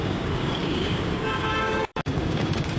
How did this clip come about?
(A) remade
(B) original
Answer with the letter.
A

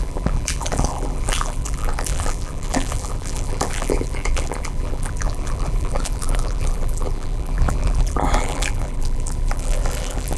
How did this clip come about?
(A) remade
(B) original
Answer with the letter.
A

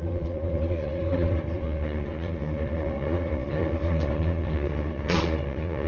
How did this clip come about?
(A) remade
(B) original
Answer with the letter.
A